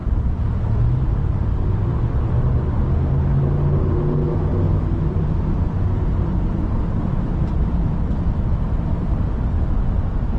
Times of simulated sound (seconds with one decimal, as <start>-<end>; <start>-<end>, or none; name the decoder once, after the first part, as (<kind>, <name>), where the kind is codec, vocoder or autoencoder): none